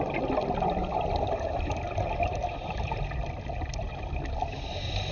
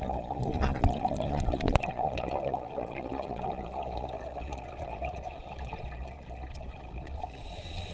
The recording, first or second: first